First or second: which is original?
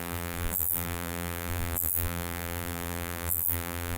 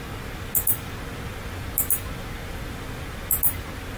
second